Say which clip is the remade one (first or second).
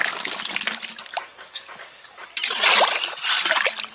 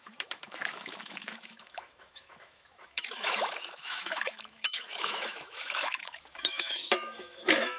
second